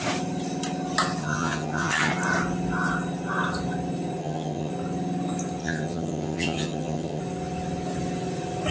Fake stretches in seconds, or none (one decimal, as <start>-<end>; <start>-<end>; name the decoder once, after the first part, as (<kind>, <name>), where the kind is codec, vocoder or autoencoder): 1.2-2.1 (vocoder, HiFi-GAN); 4.2-4.7; 5.6-7.2